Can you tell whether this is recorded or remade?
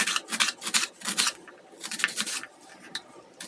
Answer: recorded